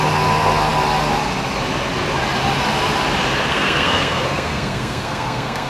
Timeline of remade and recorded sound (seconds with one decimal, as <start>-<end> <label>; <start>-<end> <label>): 0.0-3.5 recorded; 3.5-5.7 remade